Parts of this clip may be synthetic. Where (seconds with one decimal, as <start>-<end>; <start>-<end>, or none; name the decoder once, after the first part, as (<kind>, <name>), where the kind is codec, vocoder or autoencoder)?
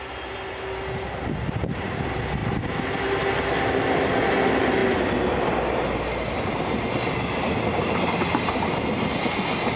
none